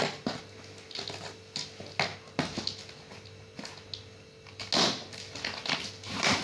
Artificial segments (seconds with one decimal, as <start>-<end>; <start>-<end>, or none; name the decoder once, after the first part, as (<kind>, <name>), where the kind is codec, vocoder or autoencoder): none